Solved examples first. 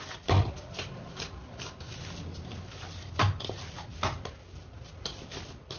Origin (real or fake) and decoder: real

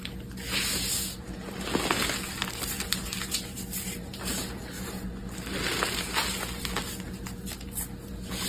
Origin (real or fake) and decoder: real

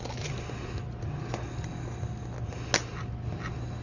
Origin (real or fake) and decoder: real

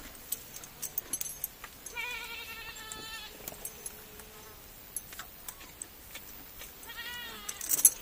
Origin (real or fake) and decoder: real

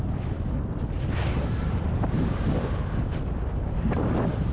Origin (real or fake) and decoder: real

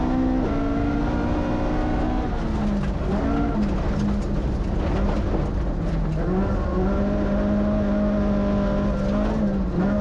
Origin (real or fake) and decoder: real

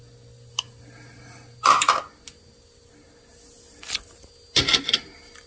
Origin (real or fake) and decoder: real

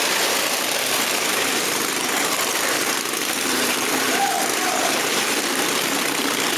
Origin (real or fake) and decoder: fake, vocoder, BigVGAN v2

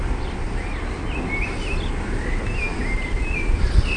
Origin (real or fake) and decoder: real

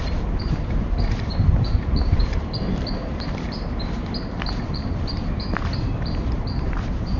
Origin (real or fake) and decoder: fake, vocoder, BigVGAN v2